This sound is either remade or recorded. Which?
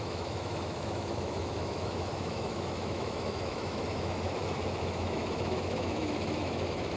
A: remade